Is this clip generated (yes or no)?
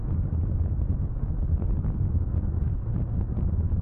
no